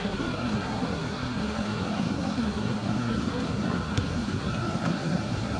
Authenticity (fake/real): fake